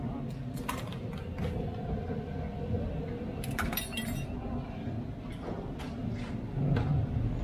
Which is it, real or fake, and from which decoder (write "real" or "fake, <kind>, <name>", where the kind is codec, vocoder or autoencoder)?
real